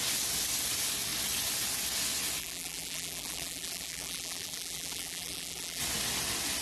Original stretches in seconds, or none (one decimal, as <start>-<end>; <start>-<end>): 0.0-2.4; 5.8-6.6